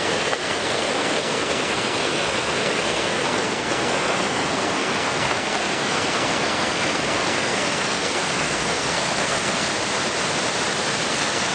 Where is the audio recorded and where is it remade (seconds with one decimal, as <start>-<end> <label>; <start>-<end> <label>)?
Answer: 0.0-9.7 remade; 9.7-11.1 recorded; 11.1-11.5 remade